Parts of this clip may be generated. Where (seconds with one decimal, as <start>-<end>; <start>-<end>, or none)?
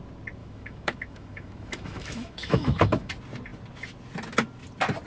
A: 0.4-3.1